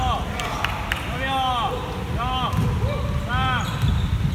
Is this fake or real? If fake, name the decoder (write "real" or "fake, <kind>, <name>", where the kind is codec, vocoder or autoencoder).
real